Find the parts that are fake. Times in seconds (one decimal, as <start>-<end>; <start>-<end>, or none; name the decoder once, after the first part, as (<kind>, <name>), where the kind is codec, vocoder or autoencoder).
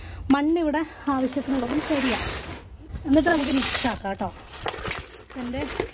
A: 1.3-1.8 (vocoder, Vocos); 3.3-4.9